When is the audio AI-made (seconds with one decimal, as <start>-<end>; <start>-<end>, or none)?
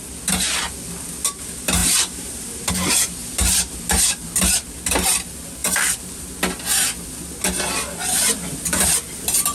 1.8-2.7; 3.2-4.5; 5.6-6.3